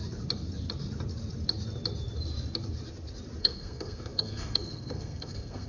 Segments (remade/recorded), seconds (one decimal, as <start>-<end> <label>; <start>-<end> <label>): 0.0-3.4 recorded; 3.4-5.7 remade